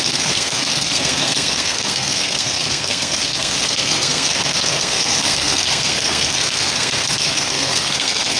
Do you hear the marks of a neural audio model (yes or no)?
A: yes